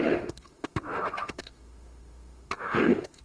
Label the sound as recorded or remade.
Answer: remade